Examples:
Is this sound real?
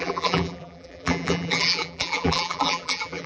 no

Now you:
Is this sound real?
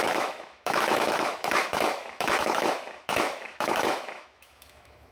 no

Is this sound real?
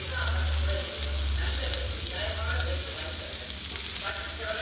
yes